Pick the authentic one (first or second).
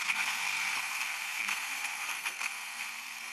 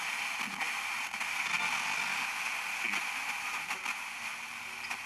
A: second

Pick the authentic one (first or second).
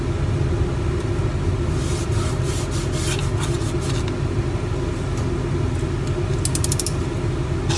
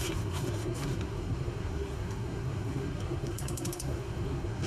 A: first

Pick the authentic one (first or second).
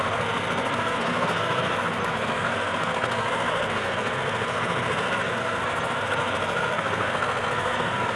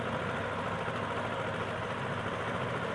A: second